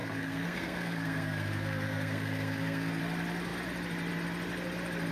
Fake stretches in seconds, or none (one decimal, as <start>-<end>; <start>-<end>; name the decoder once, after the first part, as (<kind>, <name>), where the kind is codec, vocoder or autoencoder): 0.0-3.0 (codec, SNAC)